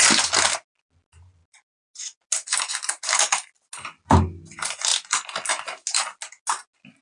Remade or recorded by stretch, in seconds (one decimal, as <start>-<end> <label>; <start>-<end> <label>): 0.0-7.0 recorded